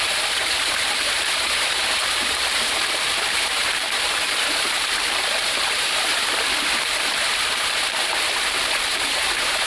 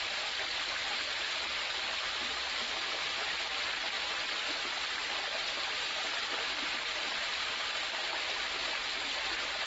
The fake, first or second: first